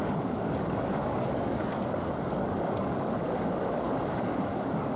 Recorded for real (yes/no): no